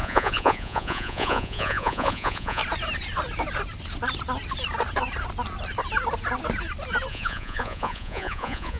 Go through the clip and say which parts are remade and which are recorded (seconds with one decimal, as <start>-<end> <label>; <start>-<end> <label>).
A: 0.0-2.6 remade; 2.6-7.1 recorded; 7.1-8.8 remade